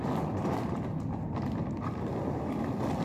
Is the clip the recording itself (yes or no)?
yes